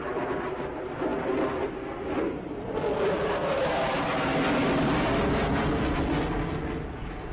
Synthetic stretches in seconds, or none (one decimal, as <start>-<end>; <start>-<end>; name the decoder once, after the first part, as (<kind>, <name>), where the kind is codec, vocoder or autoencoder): none